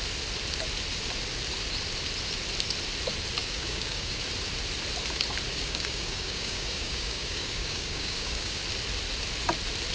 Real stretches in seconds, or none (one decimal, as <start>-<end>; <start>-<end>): 0.0-3.4; 4.2-5.5; 8.6-9.9